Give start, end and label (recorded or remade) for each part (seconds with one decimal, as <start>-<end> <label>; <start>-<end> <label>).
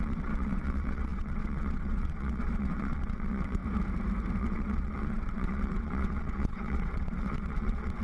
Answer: 0.0-3.6 remade; 3.6-4.4 recorded; 4.4-8.0 remade